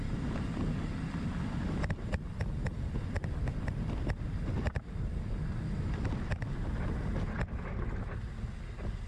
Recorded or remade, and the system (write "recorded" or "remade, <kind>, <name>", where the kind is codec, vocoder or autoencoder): recorded